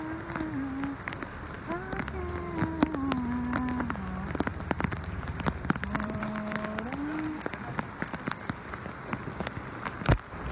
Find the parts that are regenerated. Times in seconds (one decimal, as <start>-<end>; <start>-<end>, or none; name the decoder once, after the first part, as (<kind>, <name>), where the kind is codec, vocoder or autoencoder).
4.5-6.2 (vocoder, BigVGAN v2)